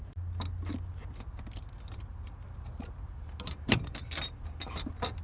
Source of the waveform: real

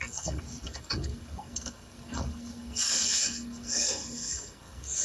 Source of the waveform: fake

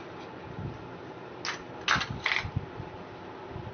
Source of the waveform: real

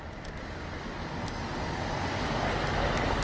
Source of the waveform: real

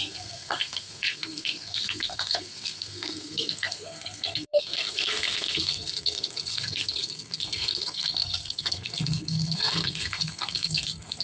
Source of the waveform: fake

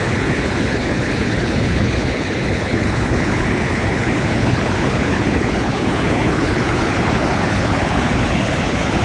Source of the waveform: fake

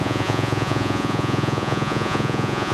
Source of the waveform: fake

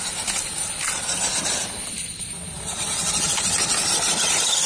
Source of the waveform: real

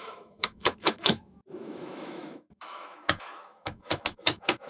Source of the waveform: fake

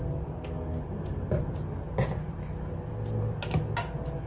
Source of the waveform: real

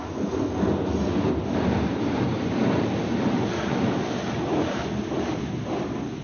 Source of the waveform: real